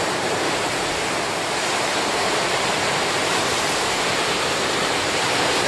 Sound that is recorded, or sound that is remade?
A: remade